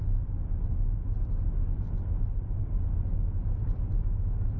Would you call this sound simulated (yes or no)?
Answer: no